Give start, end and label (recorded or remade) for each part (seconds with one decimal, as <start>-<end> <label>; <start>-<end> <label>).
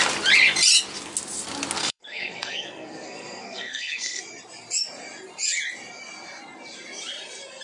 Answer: 0.0-1.8 recorded; 1.8-4.2 remade; 4.2-7.6 recorded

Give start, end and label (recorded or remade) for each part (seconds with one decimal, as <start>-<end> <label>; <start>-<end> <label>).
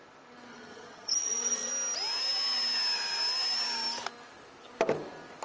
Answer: 0.0-0.5 recorded; 0.5-1.7 remade; 1.7-5.4 recorded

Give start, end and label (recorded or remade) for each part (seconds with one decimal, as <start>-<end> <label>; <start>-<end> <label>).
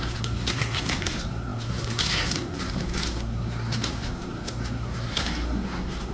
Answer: 0.0-6.1 remade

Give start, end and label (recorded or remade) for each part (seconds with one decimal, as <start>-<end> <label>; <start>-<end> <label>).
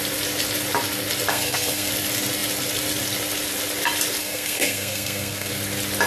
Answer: 0.0-1.3 recorded; 1.3-1.9 remade; 1.9-4.2 recorded; 4.2-5.5 remade; 5.5-6.1 recorded